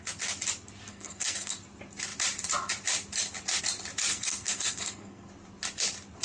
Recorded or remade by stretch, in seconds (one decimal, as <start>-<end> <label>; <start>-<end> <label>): 0.0-0.9 recorded; 0.9-1.6 remade; 1.6-4.1 recorded; 4.1-5.3 remade; 5.3-6.2 recorded